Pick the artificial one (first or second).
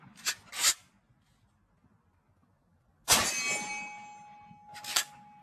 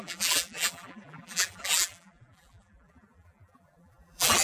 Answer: second